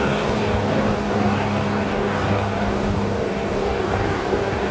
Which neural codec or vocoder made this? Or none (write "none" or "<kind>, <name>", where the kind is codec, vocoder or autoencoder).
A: codec, DAC